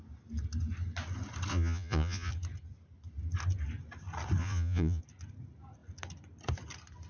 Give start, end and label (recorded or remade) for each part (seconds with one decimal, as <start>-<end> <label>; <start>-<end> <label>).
0.0-1.5 recorded; 1.5-2.3 remade; 2.3-4.4 recorded; 4.4-5.0 remade; 5.0-7.1 recorded